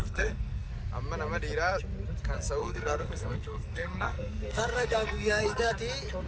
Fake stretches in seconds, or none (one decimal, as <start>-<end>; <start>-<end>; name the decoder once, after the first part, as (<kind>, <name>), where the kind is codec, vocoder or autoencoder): 0.0-0.7 (codec, SNAC); 2.6-5.7